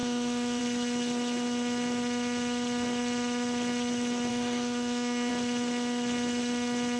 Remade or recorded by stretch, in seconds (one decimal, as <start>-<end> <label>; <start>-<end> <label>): 0.0-0.6 remade; 0.6-4.3 recorded; 4.3-5.3 remade; 5.3-7.0 recorded